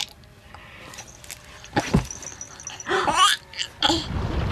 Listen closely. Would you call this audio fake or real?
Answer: real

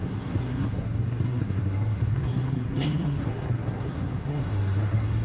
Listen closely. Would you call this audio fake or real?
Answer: fake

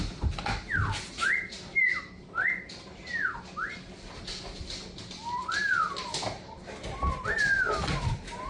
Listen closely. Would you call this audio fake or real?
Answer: real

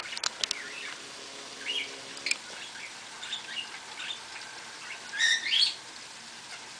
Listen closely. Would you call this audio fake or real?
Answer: real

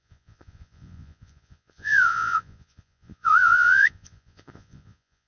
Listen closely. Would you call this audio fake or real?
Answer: fake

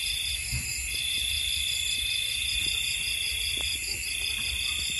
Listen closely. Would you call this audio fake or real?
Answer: real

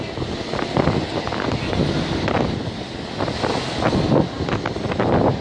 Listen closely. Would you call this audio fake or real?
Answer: real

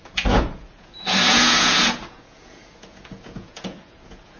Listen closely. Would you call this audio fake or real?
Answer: fake